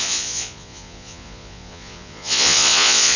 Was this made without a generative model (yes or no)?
no